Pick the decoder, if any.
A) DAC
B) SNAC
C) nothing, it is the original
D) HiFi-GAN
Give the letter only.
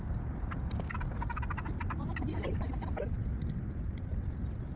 C